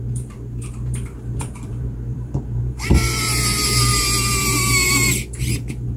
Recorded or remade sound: remade